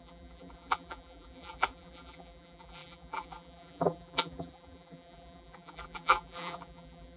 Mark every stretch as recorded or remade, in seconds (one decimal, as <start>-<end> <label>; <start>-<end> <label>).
0.0-7.2 remade